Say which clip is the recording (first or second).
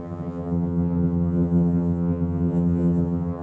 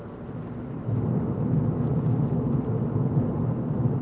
second